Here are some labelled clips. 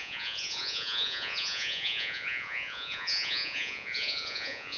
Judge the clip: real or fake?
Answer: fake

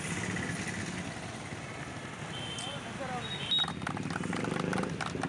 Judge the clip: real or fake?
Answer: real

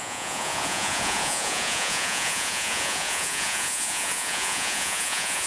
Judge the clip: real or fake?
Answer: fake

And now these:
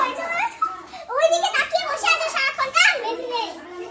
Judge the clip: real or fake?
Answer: fake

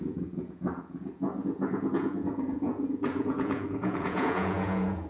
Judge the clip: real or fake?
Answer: fake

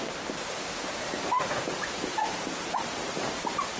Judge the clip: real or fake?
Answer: fake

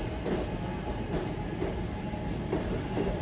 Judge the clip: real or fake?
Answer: real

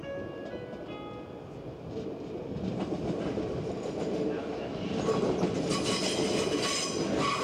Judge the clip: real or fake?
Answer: real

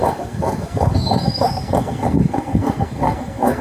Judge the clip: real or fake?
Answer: fake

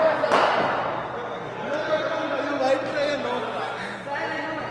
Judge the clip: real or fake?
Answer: real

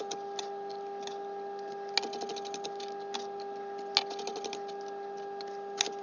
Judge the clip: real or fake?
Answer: real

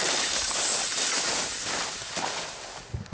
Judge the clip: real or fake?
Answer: real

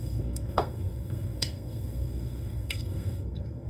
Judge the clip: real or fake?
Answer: fake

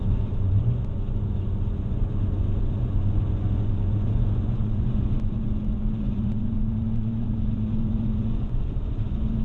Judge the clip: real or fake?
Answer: fake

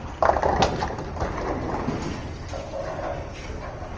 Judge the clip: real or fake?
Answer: real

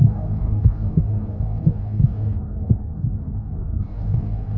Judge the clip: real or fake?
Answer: fake